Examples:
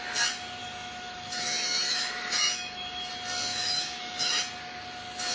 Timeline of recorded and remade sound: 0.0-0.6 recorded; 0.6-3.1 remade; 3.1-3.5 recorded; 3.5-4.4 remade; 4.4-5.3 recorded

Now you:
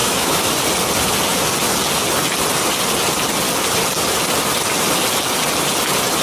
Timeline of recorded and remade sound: 0.0-0.5 remade; 0.5-6.2 recorded

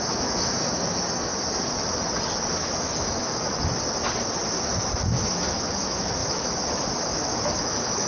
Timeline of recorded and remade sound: 0.0-1.3 remade; 1.3-2.5 recorded; 2.5-3.5 remade; 3.5-4.4 recorded; 4.4-8.1 remade

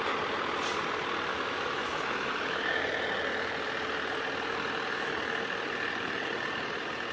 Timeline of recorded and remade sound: 0.0-1.3 recorded; 1.3-2.8 remade; 2.8-7.1 recorded

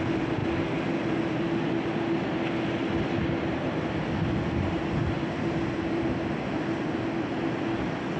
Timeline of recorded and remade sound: 0.0-8.2 recorded